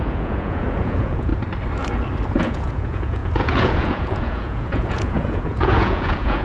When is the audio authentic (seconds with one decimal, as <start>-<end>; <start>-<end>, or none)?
1.3-2.3